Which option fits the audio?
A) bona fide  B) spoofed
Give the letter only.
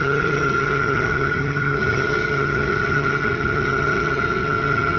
B